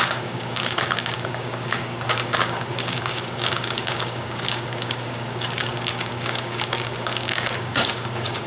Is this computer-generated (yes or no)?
yes